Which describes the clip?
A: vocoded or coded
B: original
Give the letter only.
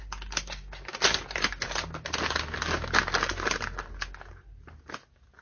B